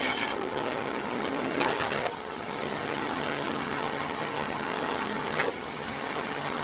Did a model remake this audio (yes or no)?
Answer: yes